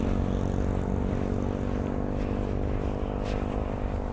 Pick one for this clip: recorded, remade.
recorded